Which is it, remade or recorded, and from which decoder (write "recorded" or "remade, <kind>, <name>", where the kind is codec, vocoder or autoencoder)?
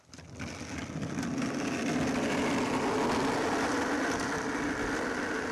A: recorded